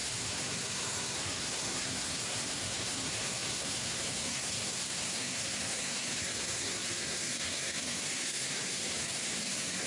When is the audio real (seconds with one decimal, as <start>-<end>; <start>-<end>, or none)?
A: none